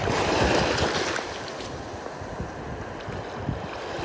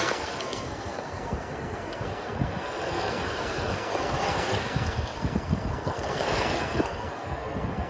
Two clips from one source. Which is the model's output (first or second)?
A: second